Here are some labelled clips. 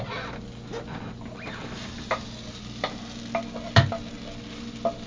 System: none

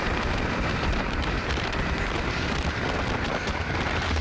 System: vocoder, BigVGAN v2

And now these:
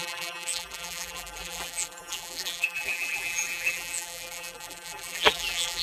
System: vocoder, BigVGAN v2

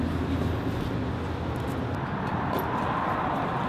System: none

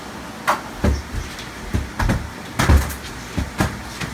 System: none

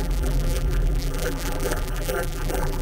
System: vocoder, BigVGAN v2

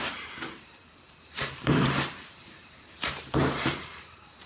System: vocoder, BigVGAN v2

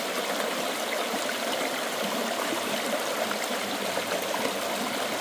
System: none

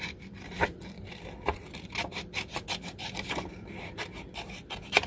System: vocoder, BigVGAN v2